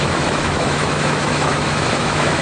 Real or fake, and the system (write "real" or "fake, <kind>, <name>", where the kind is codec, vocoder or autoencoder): fake, autoencoder, DAC-VAE